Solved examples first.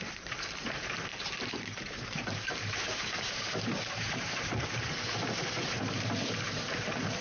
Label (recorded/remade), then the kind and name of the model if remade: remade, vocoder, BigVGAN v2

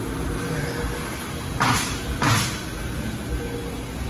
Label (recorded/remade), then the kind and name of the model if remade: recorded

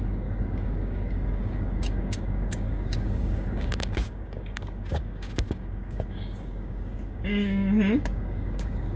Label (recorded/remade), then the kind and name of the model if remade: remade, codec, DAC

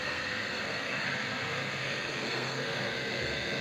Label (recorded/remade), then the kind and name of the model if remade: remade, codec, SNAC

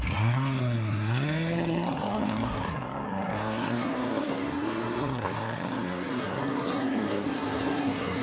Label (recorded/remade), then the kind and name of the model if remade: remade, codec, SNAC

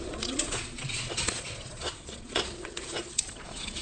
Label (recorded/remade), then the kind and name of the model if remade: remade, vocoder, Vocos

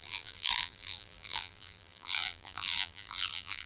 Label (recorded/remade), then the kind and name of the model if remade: remade, vocoder, BigVGAN v2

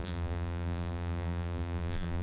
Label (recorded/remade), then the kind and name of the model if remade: remade, vocoder, BigVGAN v2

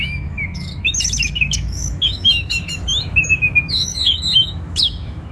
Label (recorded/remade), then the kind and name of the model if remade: remade, autoencoder, DAC-VAE